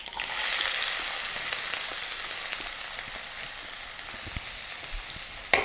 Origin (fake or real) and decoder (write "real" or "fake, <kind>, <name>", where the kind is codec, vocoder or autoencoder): real